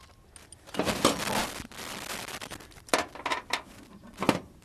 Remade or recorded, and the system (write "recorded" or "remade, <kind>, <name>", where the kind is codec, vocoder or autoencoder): recorded